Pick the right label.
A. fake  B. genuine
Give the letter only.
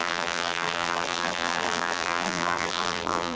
A